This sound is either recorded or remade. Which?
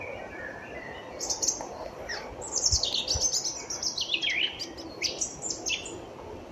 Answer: recorded